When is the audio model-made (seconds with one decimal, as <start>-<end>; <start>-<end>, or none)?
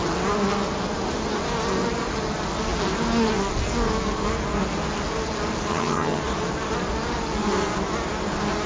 5.7-6.2